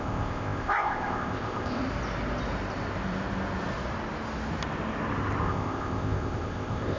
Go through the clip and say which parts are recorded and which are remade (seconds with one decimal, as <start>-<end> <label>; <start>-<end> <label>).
0.0-1.8 remade; 1.8-5.4 recorded; 5.4-7.0 remade

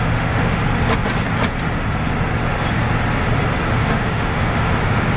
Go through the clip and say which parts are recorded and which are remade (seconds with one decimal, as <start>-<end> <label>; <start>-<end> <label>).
0.0-0.6 remade; 0.6-3.7 recorded; 3.7-5.2 remade

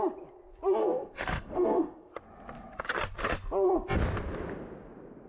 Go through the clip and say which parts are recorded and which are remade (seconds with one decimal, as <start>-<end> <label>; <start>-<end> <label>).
0.0-0.8 recorded; 0.8-2.1 remade; 2.1-5.3 recorded

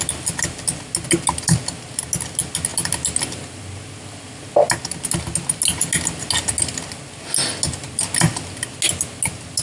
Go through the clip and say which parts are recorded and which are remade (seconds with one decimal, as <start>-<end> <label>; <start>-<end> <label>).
0.0-9.6 recorded

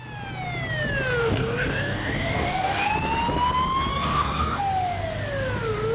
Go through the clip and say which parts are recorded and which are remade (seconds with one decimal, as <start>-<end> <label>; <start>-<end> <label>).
0.0-1.2 recorded; 1.2-2.9 remade; 2.9-3.9 recorded; 3.9-4.6 remade; 4.6-5.9 recorded